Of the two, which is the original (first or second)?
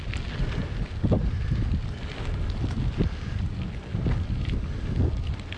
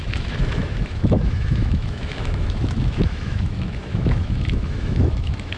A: first